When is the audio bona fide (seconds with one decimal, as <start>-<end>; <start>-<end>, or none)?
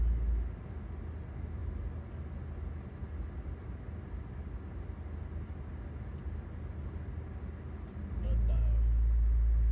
0.0-9.7